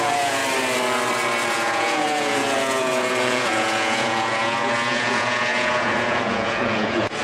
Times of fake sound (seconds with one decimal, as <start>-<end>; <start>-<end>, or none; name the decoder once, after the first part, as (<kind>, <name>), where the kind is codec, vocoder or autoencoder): 0.0-0.4 (vocoder, Vocos); 1.5-7.2